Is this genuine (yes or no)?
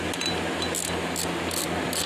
yes